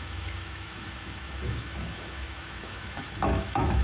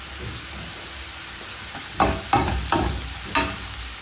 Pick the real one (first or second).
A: second